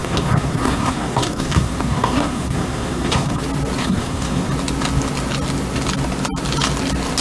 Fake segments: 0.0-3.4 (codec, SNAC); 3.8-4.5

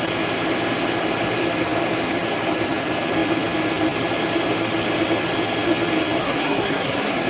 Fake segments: 6.2-7.3 (codec, SNAC)

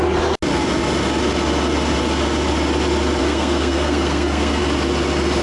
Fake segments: 3.2-4.6 (codec, SNAC)